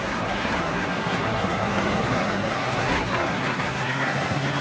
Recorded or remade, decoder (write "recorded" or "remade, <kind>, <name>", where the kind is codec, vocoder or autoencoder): remade, codec, SNAC